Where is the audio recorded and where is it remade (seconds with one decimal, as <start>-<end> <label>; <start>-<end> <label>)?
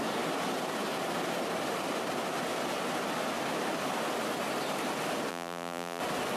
0.0-5.3 recorded; 5.3-6.0 remade; 6.0-6.4 recorded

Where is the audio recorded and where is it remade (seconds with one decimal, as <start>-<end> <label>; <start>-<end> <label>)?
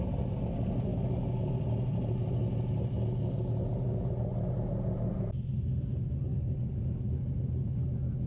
0.0-6.3 recorded; 6.3-6.8 remade; 6.8-8.3 recorded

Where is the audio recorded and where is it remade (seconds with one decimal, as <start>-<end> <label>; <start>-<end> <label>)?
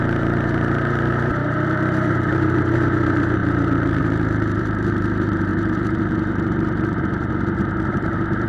0.0-8.5 remade